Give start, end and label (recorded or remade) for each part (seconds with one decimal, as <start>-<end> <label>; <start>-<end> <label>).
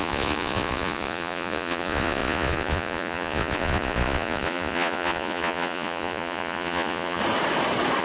0.0-7.2 remade; 7.2-8.0 recorded